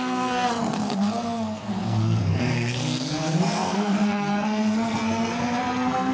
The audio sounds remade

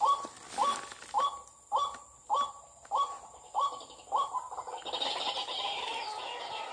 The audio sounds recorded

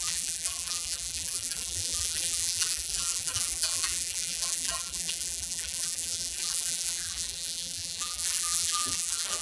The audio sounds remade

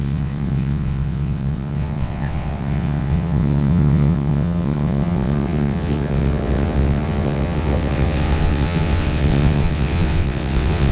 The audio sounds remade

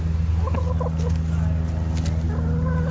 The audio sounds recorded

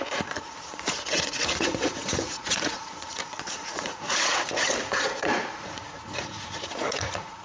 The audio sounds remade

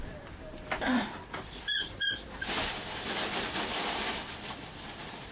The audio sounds remade